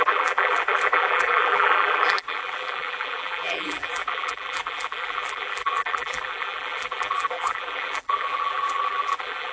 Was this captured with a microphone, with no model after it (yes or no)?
no